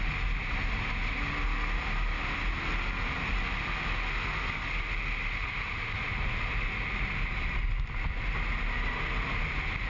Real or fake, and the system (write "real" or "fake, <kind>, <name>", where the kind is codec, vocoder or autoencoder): real